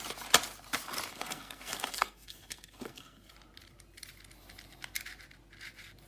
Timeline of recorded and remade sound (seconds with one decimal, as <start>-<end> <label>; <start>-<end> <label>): 0.0-1.1 recorded; 1.1-3.3 remade; 3.3-6.1 recorded